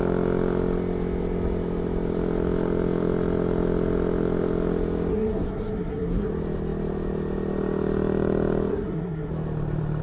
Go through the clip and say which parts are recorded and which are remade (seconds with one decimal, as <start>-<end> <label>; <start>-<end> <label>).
0.0-5.1 recorded; 5.1-6.3 remade; 6.3-8.7 recorded; 8.7-9.3 remade; 9.3-10.0 recorded